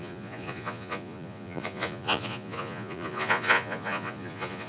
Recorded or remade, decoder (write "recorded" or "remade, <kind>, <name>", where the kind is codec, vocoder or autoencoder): remade, vocoder, Vocos